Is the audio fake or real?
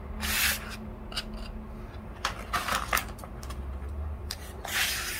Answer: real